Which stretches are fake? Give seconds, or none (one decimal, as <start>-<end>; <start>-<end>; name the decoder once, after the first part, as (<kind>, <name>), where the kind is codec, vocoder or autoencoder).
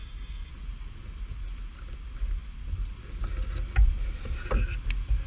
0.0-0.5 (codec, DAC)